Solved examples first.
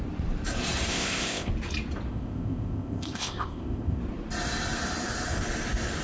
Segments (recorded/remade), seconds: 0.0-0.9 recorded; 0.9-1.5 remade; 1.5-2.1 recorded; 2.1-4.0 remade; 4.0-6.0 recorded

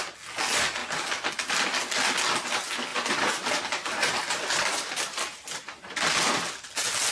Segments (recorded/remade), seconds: 0.0-2.9 recorded; 2.9-3.5 remade; 3.5-4.0 recorded; 4.0-6.1 remade; 6.1-7.1 recorded

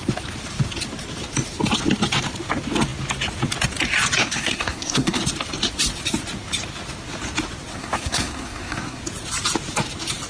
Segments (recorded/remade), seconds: 0.0-4.2 recorded; 4.2-5.2 remade; 5.2-7.7 recorded; 7.7-9.0 remade; 9.0-10.3 recorded